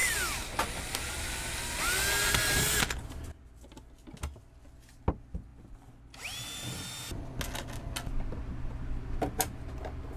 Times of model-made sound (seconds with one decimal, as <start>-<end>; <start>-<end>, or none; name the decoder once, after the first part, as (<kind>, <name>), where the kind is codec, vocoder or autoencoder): none